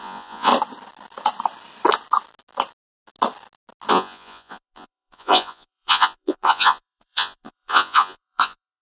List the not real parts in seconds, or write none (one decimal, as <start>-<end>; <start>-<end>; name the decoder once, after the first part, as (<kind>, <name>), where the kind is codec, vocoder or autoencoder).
0.0-0.5 (vocoder, Vocos); 3.9-8.8